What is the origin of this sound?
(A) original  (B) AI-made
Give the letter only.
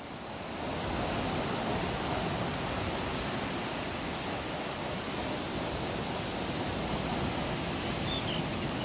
A